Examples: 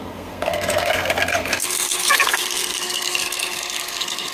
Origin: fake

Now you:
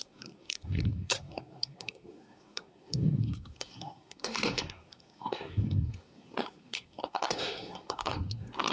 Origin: fake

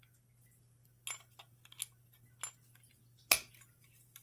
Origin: real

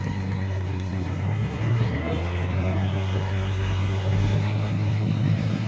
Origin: fake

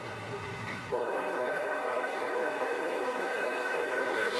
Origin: fake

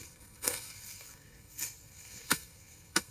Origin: fake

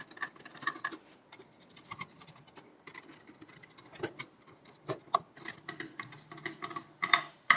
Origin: real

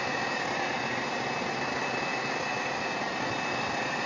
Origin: real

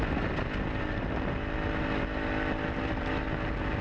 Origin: real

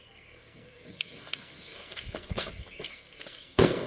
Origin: fake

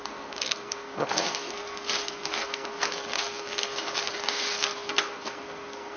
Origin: fake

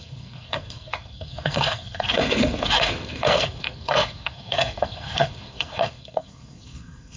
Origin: fake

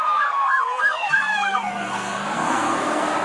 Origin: fake